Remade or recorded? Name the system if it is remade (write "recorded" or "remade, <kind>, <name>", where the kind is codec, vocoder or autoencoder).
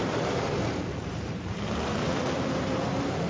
remade, vocoder, BigVGAN v2